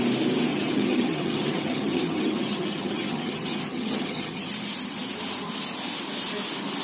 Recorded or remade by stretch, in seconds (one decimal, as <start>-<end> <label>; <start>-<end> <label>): 0.0-0.5 recorded; 0.5-4.5 remade; 4.5-6.8 recorded